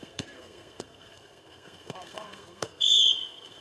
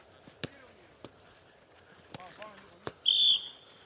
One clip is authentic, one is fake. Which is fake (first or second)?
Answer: first